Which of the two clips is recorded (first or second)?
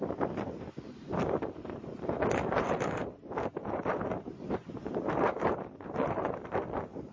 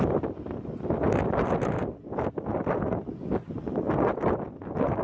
second